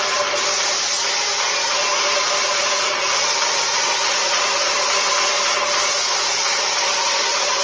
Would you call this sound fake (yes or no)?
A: no